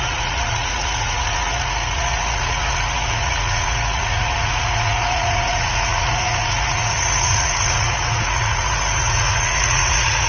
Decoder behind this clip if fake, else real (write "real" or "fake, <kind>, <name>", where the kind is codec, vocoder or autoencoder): fake, vocoder, Vocos